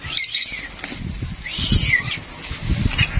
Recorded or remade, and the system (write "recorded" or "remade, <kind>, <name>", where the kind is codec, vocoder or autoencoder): recorded